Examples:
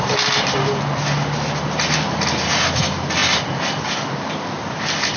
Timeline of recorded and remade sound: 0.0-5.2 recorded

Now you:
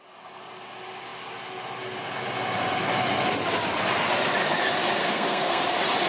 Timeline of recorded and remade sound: 0.0-5.0 recorded; 5.0-5.6 remade; 5.6-6.1 recorded